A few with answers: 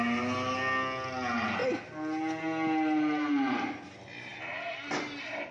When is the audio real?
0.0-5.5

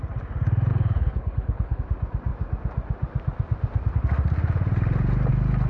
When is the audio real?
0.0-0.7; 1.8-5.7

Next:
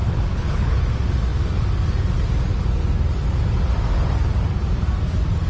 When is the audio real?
0.8-5.5

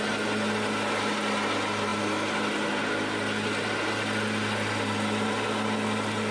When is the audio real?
0.0-6.3